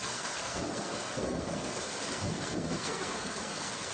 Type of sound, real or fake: fake